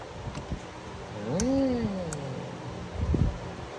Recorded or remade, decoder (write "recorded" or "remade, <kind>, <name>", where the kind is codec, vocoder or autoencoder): recorded